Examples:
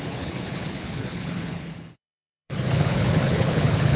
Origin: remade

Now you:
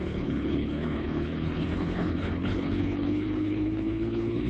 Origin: remade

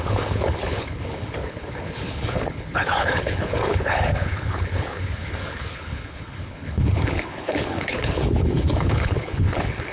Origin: remade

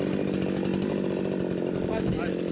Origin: recorded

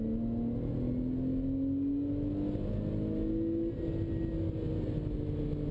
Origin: recorded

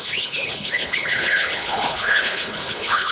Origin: remade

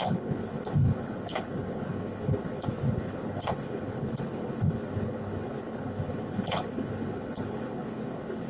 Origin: remade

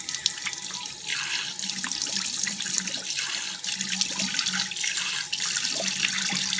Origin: recorded